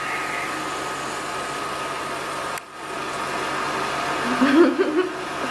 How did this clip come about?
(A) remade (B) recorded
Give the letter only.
B